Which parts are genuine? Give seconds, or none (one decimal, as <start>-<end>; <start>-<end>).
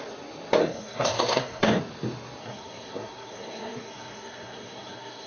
0.0-0.6; 1.8-2.4